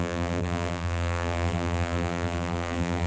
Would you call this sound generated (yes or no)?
yes